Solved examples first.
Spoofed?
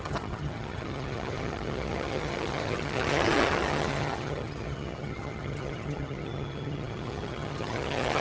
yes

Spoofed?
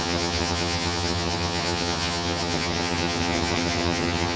yes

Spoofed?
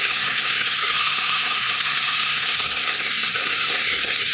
yes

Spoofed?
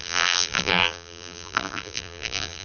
yes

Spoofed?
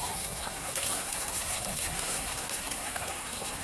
yes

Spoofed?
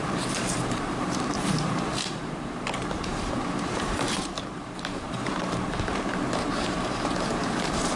yes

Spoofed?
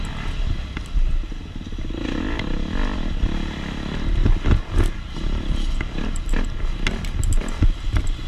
no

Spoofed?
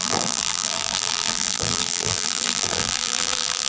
yes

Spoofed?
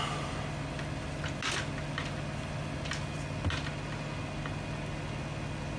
no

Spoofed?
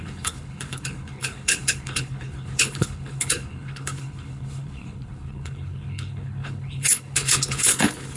yes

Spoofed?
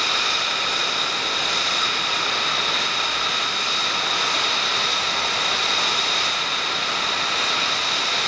no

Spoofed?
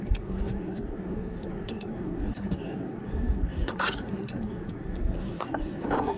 yes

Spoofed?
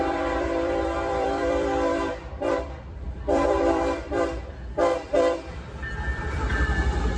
yes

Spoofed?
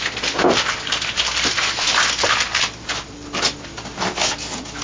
yes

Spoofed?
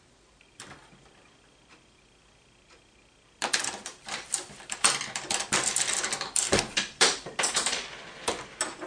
yes